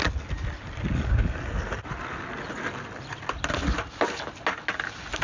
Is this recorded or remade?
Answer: recorded